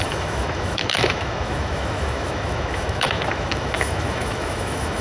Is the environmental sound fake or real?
fake